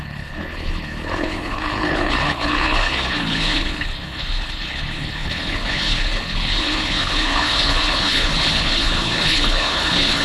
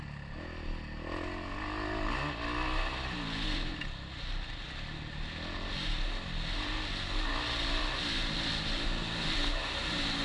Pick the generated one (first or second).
first